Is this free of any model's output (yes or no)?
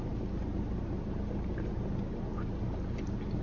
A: yes